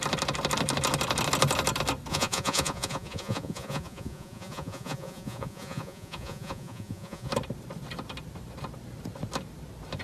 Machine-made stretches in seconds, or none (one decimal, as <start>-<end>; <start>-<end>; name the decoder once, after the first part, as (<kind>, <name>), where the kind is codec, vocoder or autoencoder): 2.1-7.3 (vocoder, Vocos)